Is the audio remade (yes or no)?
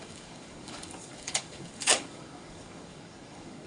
yes